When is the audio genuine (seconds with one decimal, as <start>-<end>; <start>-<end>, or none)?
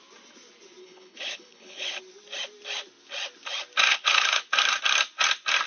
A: 0.0-0.8; 2.0-3.9; 4.4-5.7